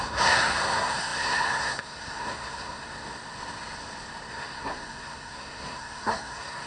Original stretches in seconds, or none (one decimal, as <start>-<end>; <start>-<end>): 2.9-4.3